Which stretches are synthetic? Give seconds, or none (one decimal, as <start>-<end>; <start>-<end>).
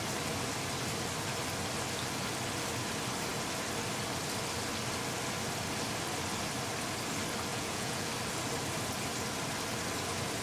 7.5-8.1